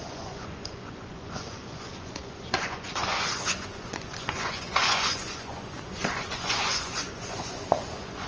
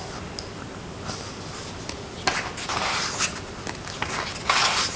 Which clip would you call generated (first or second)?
first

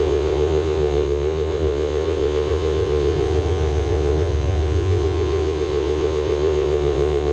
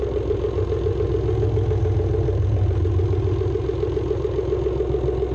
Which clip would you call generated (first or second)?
first